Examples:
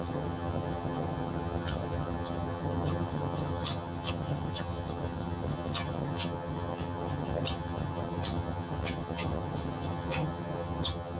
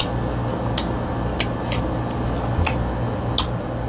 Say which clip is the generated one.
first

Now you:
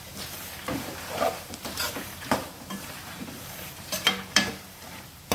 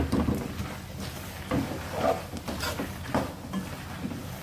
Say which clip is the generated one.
first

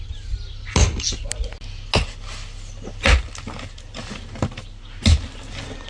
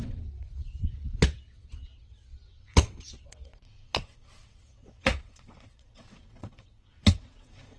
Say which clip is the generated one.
second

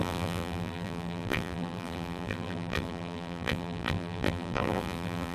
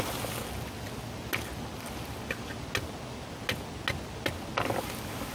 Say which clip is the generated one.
first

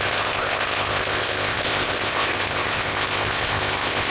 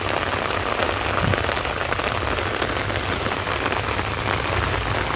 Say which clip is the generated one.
first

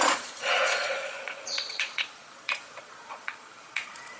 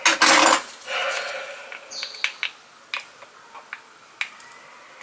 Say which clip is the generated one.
first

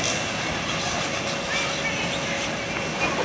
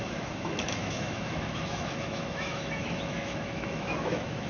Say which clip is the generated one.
second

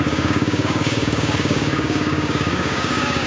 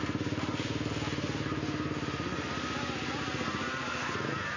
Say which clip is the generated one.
first